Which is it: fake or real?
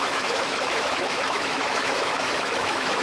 fake